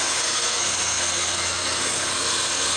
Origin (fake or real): fake